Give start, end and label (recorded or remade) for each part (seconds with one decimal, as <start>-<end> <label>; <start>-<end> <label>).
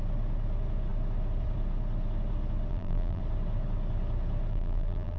0.0-2.7 recorded; 2.7-3.2 remade; 3.2-4.5 recorded; 4.5-5.2 remade